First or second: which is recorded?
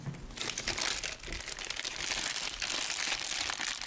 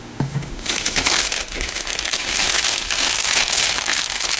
first